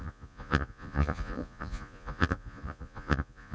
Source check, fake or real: fake